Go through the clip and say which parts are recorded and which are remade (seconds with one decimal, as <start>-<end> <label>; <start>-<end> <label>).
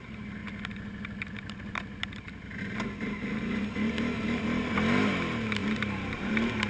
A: 0.0-6.7 recorded